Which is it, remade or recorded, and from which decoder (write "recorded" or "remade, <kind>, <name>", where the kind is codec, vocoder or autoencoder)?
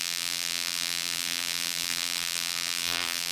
remade, vocoder, BigVGAN v2